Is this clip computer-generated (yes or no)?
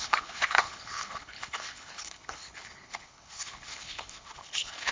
yes